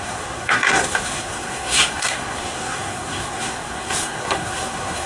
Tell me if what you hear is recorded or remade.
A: remade